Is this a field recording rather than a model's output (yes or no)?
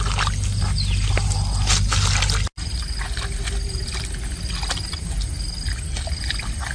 yes